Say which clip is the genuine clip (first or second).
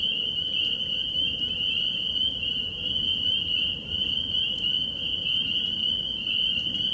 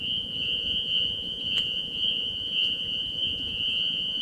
first